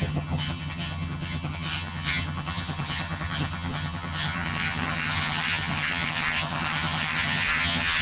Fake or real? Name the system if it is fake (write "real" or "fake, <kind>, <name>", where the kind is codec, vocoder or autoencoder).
fake, vocoder, HiFi-GAN